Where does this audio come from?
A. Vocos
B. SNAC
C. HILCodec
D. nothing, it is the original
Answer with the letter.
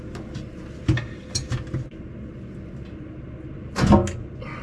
D